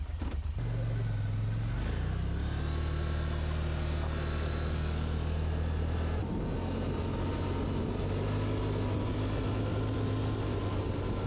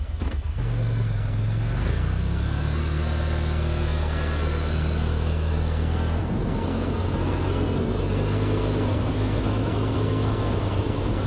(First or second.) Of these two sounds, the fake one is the second